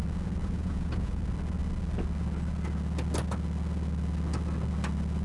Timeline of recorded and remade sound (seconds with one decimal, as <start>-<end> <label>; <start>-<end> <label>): 0.0-0.4 recorded; 0.4-1.2 remade; 1.2-5.2 recorded